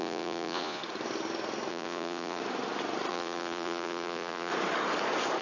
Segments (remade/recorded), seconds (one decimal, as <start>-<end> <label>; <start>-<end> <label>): 0.0-0.8 remade; 0.8-1.7 recorded; 1.7-2.4 remade; 2.4-3.1 recorded; 3.1-4.5 remade; 4.5-5.4 recorded